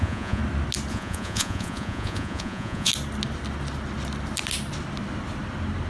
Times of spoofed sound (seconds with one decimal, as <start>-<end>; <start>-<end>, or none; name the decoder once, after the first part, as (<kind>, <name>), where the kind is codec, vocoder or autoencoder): 0.0-0.4 (vocoder, Vocos); 0.9-2.9